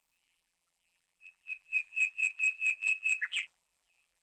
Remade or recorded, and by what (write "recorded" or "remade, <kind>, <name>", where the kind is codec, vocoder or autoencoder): remade, vocoder, BigVGAN v2